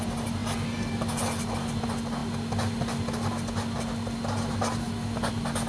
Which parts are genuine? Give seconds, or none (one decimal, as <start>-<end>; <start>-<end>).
0.0-5.7